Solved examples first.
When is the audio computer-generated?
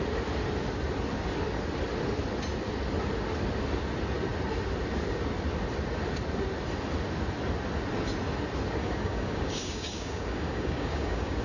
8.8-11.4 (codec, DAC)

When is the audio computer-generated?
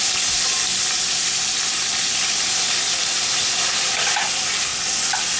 none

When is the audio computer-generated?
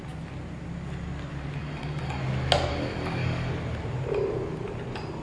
1.6-2.2 (codec, DAC); 2.7-3.5